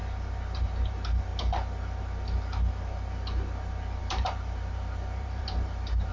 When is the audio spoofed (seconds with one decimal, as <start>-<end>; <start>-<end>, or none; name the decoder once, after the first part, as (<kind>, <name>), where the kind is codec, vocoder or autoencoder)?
4.0-6.1 (vocoder, BigVGAN v2)